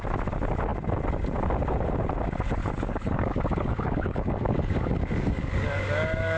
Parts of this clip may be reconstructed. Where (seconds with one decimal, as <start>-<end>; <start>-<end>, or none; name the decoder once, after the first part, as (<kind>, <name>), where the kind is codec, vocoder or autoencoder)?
2.6-6.4 (codec, DAC)